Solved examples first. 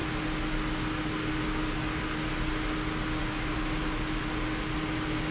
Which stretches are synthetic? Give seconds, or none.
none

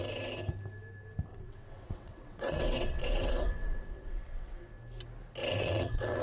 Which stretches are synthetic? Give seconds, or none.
1.3-4.6 (vocoder, WaveNeXt); 5.4-6.2

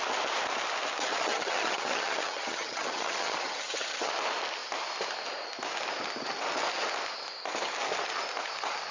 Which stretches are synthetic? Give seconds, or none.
1.1-4.1 (vocoder, HiFi-GAN)

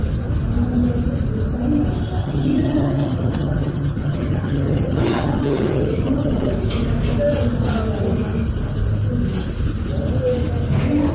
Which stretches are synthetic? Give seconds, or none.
2.2-6.5 (vocoder, HiFi-GAN)

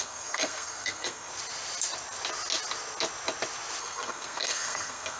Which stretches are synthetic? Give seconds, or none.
0.0-1.3 (codec, SNAC); 3.8-5.2

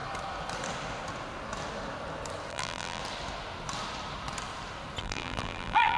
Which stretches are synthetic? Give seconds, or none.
2.5-3.0 (vocoder, BigVGAN v2); 5.0-6.0

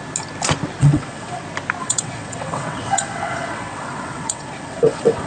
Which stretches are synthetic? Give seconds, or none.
0.8-1.4 (vocoder, WaveNeXt); 1.8-5.3